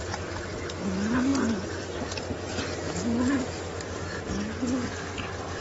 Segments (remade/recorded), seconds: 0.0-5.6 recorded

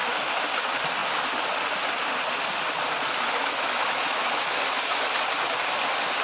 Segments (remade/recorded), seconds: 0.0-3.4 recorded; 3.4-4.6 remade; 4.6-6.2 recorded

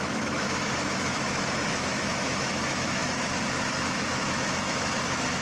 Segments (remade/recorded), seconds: 0.0-5.4 remade